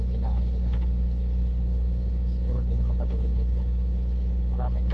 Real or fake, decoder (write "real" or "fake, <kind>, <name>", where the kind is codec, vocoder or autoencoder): fake, codec, HILCodec